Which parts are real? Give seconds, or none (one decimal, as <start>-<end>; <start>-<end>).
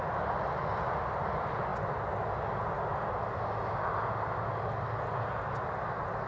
0.0-6.3